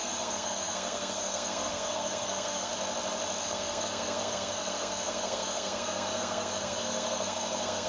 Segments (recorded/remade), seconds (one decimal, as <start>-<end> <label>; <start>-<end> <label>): 0.0-2.7 remade; 2.7-3.4 recorded; 3.4-7.9 remade